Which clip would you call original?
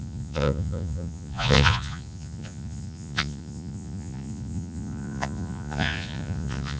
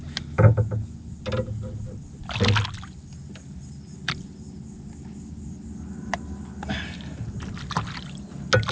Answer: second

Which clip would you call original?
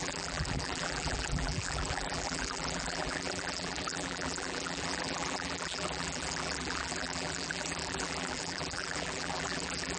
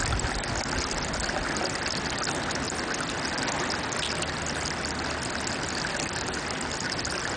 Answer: second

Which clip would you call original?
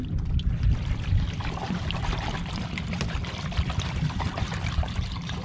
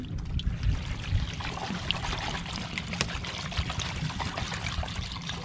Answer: second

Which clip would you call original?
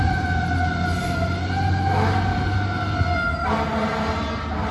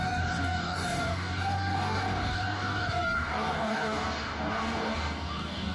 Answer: first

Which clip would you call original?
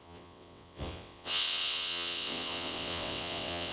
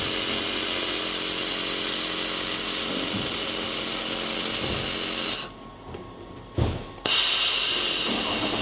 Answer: second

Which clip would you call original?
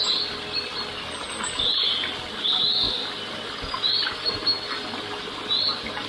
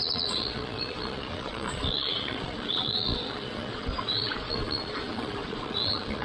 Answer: first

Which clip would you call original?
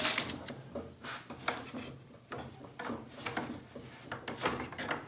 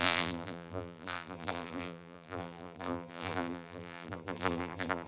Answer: first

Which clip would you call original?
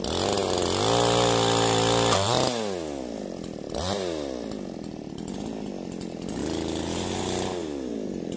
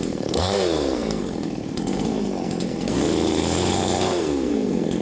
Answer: first